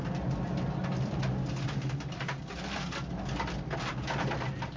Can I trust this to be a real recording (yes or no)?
yes